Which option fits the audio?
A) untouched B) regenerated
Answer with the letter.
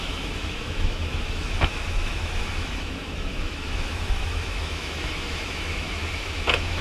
B